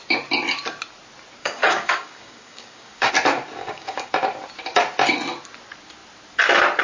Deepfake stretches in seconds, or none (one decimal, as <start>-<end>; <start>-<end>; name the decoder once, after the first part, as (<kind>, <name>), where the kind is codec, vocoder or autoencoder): 1.4-3.1 (codec, DAC); 3.6-4.1